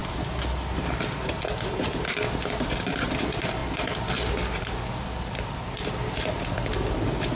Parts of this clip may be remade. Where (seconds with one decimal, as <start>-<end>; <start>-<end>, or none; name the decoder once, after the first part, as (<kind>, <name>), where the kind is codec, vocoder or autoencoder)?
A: none